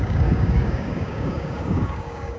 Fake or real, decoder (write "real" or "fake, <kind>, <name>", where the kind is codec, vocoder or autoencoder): fake, codec, DAC